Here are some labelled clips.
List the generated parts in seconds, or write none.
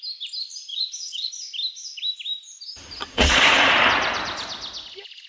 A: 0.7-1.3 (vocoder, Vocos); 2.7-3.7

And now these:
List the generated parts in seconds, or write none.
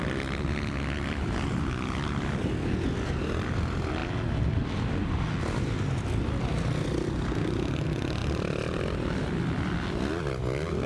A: none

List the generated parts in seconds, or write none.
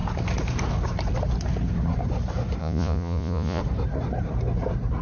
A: 2.6-3.6 (vocoder, Vocos)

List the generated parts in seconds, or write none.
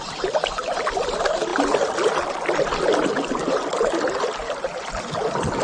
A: none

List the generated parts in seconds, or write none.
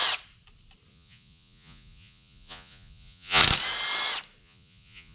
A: 0.9-3.4 (vocoder, Vocos); 4.4-5.1